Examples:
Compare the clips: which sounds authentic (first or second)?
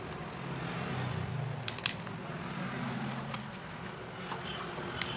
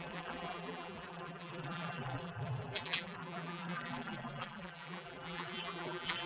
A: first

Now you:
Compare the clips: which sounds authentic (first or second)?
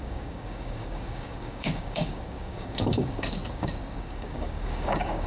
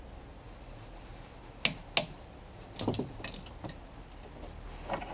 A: second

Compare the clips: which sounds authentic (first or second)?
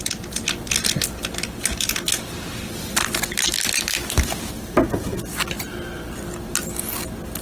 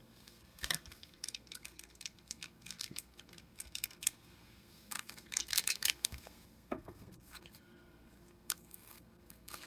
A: first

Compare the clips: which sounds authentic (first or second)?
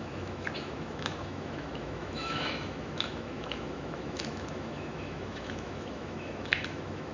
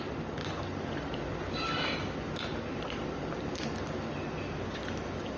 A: second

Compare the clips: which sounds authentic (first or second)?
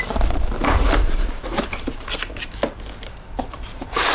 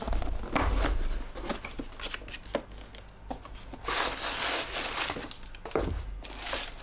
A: second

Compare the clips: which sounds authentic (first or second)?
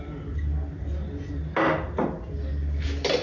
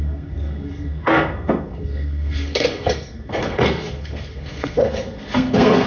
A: first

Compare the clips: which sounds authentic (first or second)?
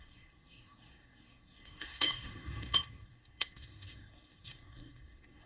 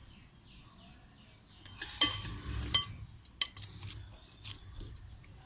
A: second